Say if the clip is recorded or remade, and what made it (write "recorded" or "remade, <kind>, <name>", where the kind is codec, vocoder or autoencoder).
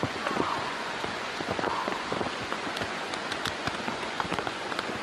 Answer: remade, vocoder, Vocos